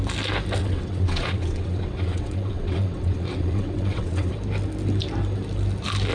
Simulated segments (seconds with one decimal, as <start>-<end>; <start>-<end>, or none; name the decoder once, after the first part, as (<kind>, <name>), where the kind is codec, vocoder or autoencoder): 0.6-4.3 (vocoder, WaveNeXt)